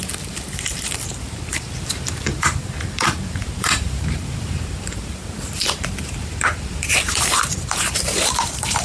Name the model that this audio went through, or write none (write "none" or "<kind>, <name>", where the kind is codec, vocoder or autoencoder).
vocoder, BigVGAN v2